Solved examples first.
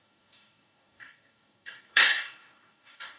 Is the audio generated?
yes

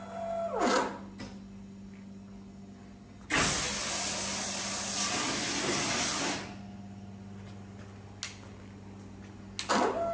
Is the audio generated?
no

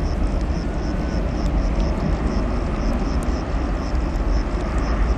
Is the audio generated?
no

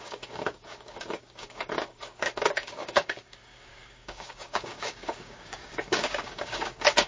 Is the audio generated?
yes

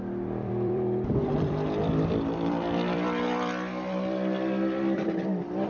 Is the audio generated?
yes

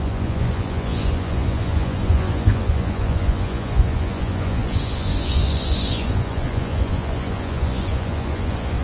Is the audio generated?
yes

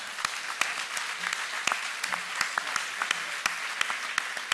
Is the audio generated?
no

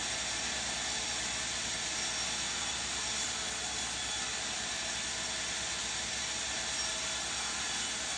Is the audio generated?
no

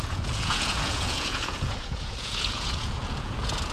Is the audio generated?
yes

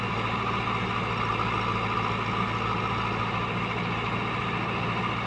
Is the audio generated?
no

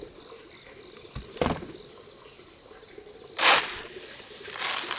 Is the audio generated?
no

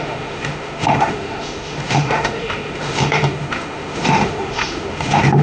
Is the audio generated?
yes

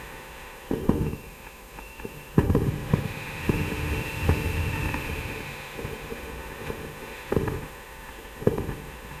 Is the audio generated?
yes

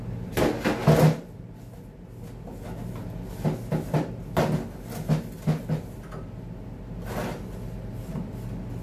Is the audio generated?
no